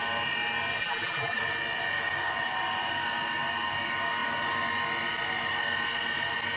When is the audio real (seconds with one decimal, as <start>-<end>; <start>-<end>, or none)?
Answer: 0.0-0.8; 1.4-6.6